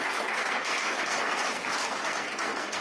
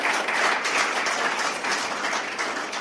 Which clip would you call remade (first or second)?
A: first